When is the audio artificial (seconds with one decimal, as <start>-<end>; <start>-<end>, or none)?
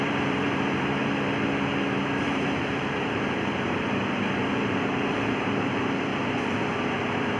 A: 0.0-1.0; 2.2-6.1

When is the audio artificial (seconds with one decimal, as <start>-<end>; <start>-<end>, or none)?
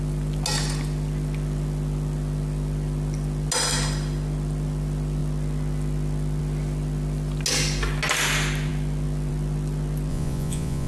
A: 10.1-10.9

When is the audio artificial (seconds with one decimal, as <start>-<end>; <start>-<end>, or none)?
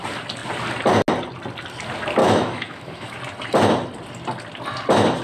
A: 2.2-3.2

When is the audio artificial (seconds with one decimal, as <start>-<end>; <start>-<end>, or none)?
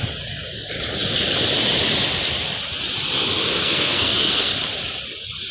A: 3.5-4.5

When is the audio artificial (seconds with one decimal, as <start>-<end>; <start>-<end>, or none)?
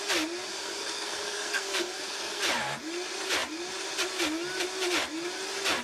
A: 0.5-2.4